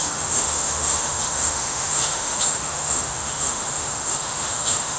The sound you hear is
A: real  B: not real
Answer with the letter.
B